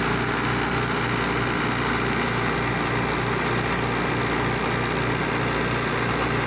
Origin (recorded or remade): recorded